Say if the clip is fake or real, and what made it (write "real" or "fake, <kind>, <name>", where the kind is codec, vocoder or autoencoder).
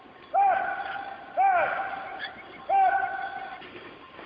real